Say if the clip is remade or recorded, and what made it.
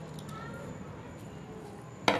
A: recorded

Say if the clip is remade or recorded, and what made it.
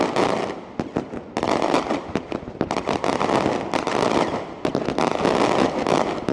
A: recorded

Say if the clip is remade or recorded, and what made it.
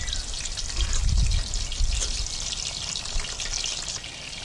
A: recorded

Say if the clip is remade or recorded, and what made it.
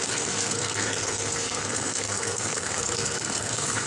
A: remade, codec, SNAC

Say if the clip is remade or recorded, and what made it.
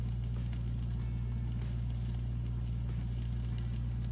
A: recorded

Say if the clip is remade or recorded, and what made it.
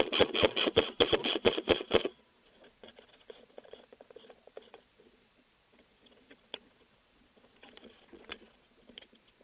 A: remade, vocoder, Vocos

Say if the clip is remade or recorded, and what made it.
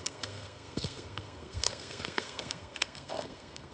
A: remade, codec, SNAC